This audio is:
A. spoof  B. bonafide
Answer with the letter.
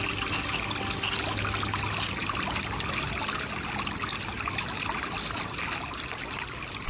B